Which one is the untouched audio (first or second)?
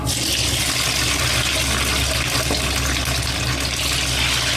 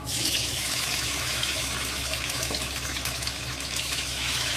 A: first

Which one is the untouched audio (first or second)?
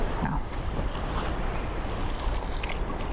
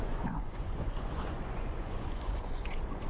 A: first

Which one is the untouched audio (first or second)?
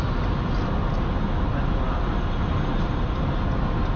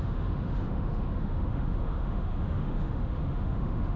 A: first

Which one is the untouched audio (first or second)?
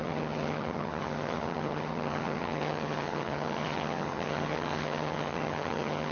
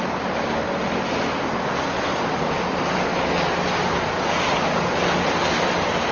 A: second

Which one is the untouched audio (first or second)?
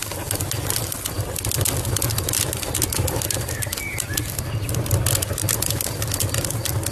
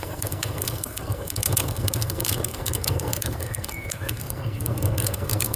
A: first